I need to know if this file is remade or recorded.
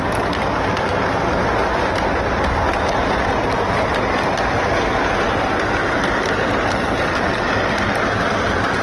recorded